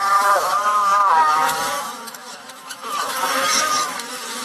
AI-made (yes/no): yes